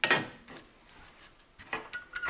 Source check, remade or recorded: recorded